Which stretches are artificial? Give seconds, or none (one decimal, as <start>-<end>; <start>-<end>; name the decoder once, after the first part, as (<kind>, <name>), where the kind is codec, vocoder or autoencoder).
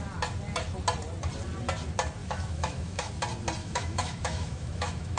2.2-3.1 (autoencoder, DAC-VAE); 3.6-5.2